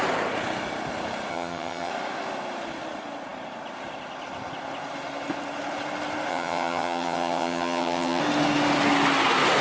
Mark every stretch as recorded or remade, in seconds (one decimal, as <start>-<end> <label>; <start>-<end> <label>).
0.0-1.3 recorded; 1.3-1.9 remade; 1.9-6.3 recorded; 6.3-8.2 remade; 8.2-9.6 recorded